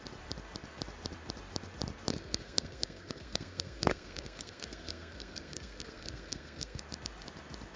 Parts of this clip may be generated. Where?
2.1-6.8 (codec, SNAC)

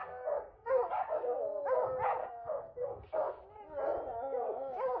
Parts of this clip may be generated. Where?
0.0-0.8 (codec, SNAC); 2.2-3.4

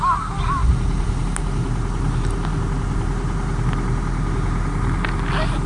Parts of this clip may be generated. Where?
none

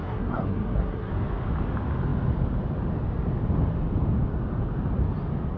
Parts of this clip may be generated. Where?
0.0-1.1 (codec, SNAC)

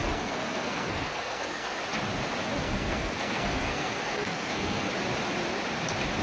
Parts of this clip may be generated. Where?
0.0-1.8 (codec, SNAC); 2.6-4.9

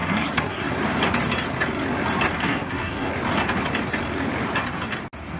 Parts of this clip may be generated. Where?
0.0-0.7 (codec, SNAC); 2.4-3.1

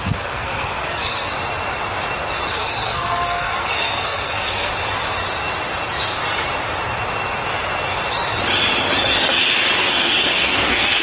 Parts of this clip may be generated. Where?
0.0-1.3 (codec, SNAC); 2.5-4.7; 9.8-11.0

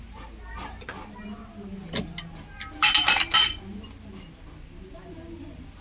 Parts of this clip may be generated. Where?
none